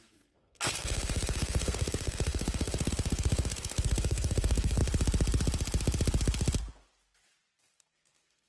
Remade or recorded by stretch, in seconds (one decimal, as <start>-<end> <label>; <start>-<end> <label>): 0.0-4.8 remade; 4.8-7.6 recorded; 7.6-8.5 remade